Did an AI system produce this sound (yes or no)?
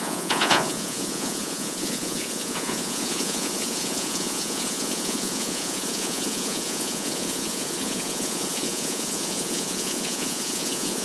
yes